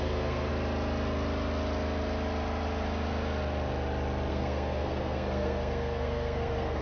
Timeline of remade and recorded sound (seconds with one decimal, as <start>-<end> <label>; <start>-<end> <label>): 0.0-0.5 remade; 0.5-4.3 recorded; 4.3-6.8 remade